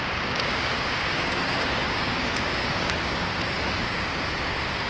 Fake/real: fake